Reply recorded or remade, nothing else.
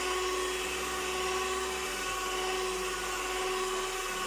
recorded